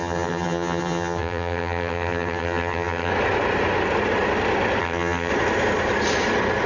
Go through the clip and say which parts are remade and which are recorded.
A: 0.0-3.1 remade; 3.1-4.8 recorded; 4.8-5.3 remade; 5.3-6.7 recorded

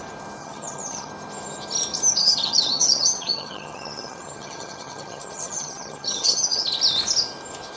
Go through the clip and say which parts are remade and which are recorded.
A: 0.0-0.4 recorded; 0.4-1.1 remade; 1.1-2.2 recorded; 2.2-6.6 remade; 6.6-7.8 recorded

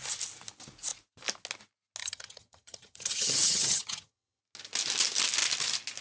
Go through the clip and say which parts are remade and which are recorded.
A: 0.0-2.0 recorded; 2.0-4.4 remade; 4.4-6.0 recorded

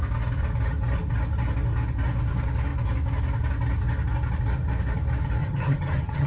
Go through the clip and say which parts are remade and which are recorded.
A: 0.0-5.4 recorded; 5.4-6.3 remade

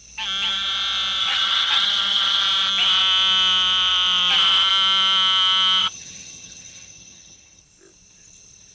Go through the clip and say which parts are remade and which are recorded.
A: 0.0-1.2 recorded; 1.2-2.4 remade; 2.4-5.8 recorded; 5.8-7.6 remade; 7.6-8.7 recorded

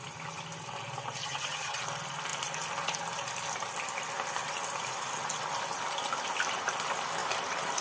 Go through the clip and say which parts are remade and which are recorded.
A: 0.0-1.2 recorded; 1.2-1.8 remade; 1.8-7.8 recorded

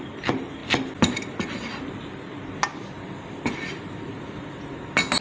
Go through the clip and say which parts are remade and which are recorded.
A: 0.0-5.2 recorded